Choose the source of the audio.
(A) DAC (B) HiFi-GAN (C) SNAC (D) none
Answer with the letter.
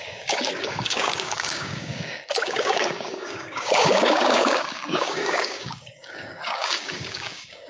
A